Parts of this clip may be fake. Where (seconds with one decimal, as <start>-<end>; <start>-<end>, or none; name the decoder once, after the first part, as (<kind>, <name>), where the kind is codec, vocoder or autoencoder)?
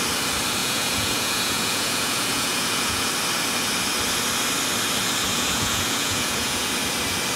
0.6-3.1 (vocoder, Vocos); 5.3-6.7